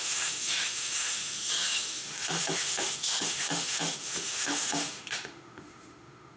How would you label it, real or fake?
fake